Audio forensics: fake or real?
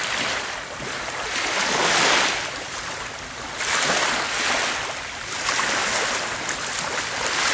real